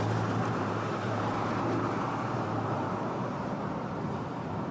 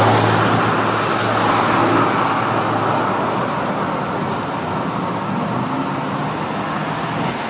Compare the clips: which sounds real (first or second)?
second